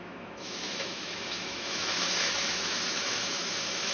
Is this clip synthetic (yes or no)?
yes